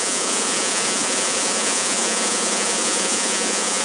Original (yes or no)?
no